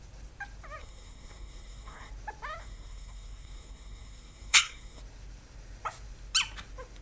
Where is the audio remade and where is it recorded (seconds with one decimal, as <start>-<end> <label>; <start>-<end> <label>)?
0.0-0.8 recorded; 0.8-2.1 remade; 2.1-2.6 recorded; 2.6-5.0 remade; 5.0-7.0 recorded